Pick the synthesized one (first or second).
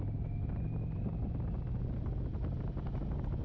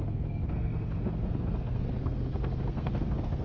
second